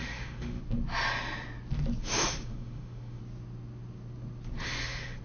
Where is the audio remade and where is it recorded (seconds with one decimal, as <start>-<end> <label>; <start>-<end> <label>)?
0.0-0.6 remade; 0.6-2.0 recorded; 2.0-3.2 remade; 3.2-4.6 recorded; 4.6-5.2 remade